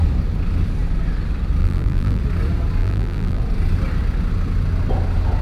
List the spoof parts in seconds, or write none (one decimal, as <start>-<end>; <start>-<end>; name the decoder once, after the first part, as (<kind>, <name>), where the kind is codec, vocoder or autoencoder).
1.6-2.2 (vocoder, BigVGAN v2); 2.8-3.4